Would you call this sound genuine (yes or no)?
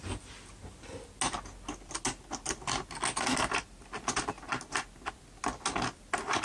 yes